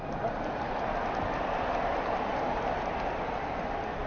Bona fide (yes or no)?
yes